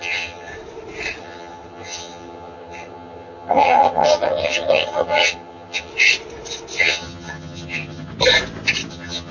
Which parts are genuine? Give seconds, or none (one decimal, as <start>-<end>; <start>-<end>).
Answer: 0.5-1.2; 5.9-6.8; 8.1-8.9